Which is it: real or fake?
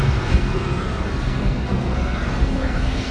fake